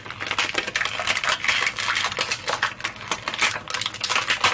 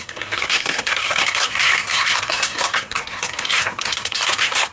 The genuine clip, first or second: first